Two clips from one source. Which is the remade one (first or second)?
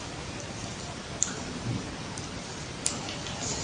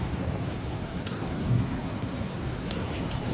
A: second